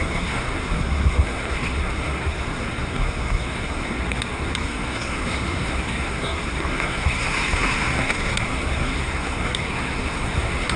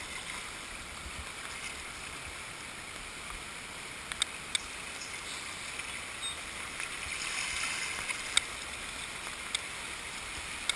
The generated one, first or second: first